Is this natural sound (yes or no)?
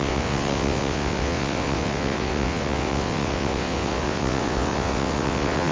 no